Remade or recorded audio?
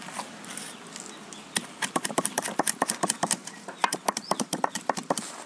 recorded